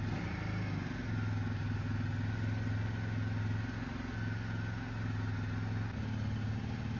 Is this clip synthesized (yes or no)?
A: no